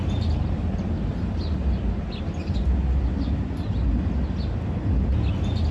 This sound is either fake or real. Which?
real